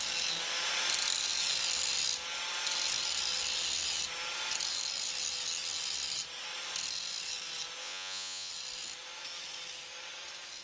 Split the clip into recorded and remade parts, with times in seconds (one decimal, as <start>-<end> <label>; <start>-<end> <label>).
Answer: 0.0-7.8 recorded; 7.8-8.5 remade; 8.5-10.6 recorded